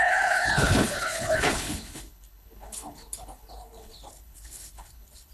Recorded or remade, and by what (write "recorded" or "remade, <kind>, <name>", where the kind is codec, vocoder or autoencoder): remade, codec, HILCodec